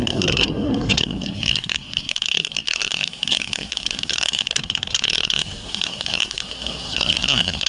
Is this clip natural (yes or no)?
no